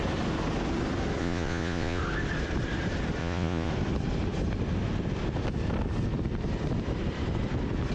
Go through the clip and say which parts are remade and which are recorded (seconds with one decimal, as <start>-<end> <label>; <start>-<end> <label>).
0.0-1.2 recorded; 1.2-2.0 remade; 2.0-3.2 recorded; 3.2-3.7 remade; 3.7-7.9 recorded